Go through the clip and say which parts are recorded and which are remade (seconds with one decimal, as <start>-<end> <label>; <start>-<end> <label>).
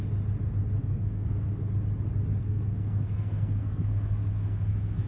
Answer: 0.0-0.8 recorded; 0.8-1.7 remade; 1.7-2.4 recorded; 2.4-5.1 remade